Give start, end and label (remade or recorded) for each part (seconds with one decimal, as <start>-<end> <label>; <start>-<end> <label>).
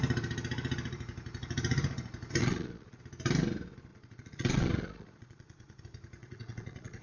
0.0-2.4 recorded; 2.4-3.0 remade; 3.0-3.9 recorded; 3.9-5.8 remade; 5.8-6.2 recorded; 6.2-7.0 remade